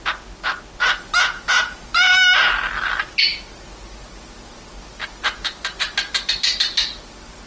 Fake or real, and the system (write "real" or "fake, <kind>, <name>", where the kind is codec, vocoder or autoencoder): real